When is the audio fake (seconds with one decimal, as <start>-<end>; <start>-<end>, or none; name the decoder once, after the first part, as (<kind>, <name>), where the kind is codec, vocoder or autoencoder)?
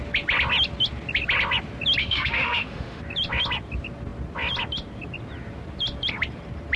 2.0-3.0 (autoencoder, DAC-VAE)